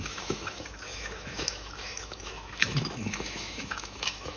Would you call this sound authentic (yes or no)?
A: no